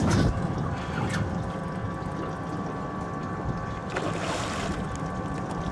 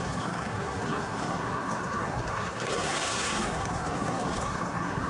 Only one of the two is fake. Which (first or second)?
second